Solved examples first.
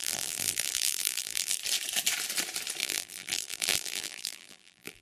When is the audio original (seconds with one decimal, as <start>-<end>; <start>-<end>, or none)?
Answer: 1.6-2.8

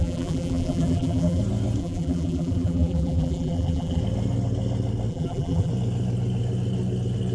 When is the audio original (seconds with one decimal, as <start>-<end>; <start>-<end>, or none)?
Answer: 1.4-1.8; 4.0-5.1; 5.7-7.3

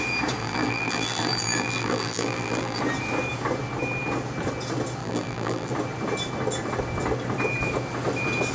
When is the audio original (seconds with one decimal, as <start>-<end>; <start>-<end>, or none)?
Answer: 0.0-0.4; 2.8-5.0; 5.7-8.5

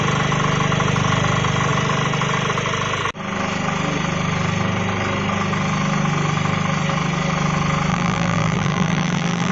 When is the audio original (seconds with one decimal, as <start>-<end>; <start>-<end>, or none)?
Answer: 0.0-7.9

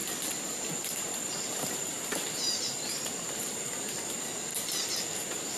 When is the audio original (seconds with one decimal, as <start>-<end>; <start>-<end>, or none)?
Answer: 3.4-5.6

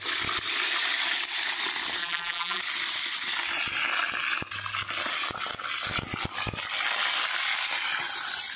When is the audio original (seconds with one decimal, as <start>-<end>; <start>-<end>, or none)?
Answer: 0.0-2.0; 2.6-8.6

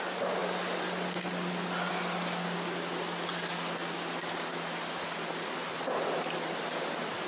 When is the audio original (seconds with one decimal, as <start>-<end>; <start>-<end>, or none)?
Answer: 0.0-7.3

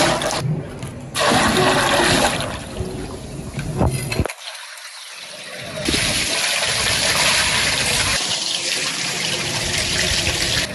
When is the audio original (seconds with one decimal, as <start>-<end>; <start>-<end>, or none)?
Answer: 0.0-8.1; 9.5-10.7